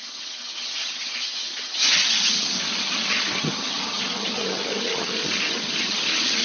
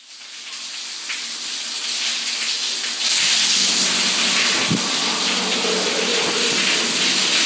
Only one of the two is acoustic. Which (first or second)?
second